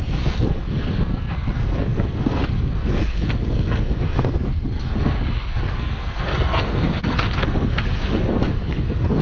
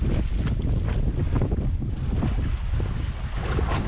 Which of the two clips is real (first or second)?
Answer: second